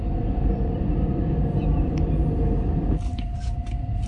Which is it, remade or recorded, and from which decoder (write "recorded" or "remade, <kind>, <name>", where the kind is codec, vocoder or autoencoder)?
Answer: recorded